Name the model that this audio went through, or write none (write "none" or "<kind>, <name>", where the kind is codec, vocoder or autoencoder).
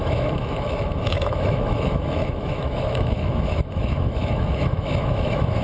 autoencoder, DAC-VAE